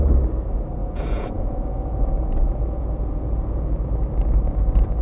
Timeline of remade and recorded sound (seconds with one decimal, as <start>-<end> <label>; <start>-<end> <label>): 0.0-0.8 recorded; 0.8-3.8 remade; 3.8-5.0 recorded